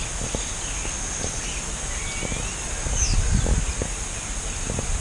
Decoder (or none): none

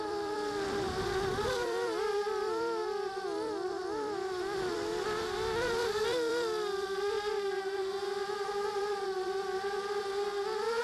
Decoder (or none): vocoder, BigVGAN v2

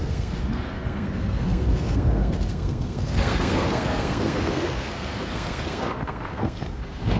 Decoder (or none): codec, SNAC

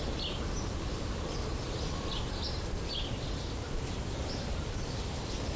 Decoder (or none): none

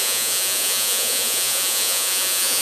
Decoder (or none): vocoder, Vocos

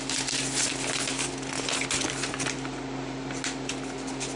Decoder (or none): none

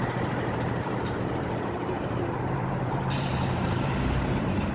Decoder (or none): vocoder, BigVGAN v2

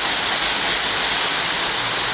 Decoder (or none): none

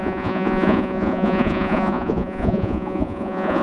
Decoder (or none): vocoder, Vocos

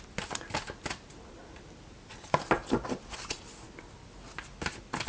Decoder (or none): none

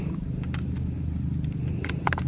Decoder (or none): none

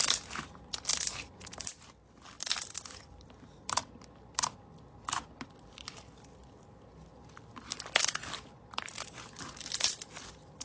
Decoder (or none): none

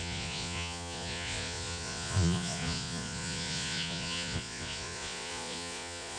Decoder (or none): vocoder, Vocos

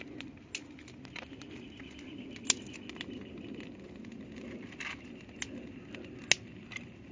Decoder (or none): none